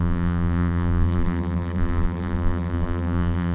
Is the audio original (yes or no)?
no